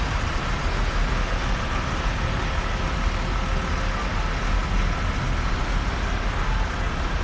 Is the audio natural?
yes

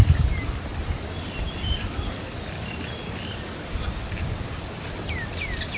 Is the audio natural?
yes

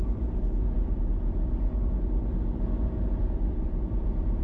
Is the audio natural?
no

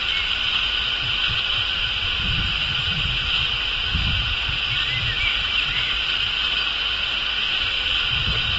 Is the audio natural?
yes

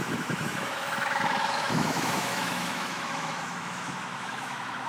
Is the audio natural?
no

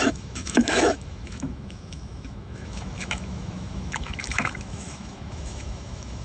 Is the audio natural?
no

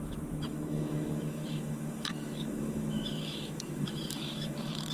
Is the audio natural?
no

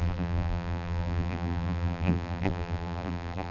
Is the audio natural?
no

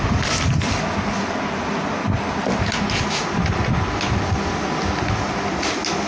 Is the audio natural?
yes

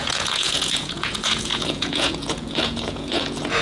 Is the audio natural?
no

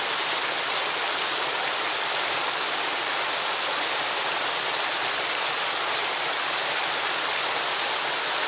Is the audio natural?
yes